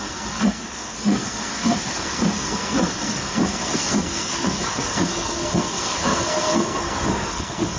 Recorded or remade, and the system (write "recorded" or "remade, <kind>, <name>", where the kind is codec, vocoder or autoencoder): remade, codec, SNAC